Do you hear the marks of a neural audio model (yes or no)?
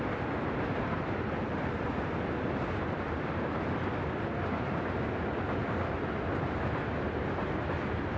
no